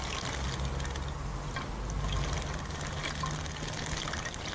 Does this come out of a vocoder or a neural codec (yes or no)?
no